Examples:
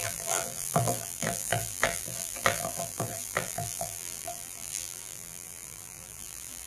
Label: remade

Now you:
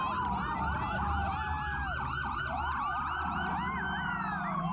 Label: recorded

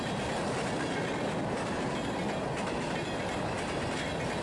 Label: recorded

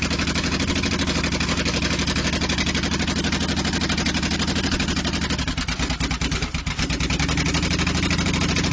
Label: recorded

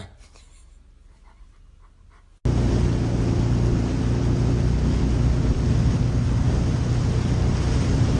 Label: recorded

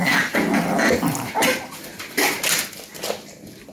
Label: recorded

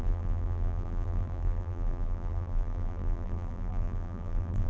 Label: remade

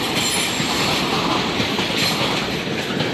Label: recorded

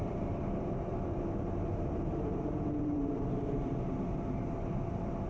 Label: remade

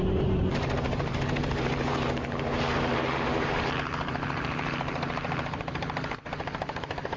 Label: remade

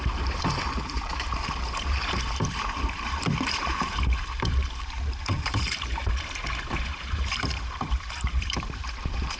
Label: remade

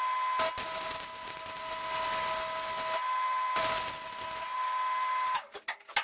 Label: recorded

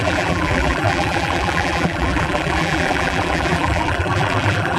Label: remade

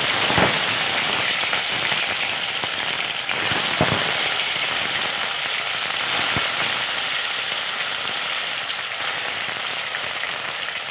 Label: remade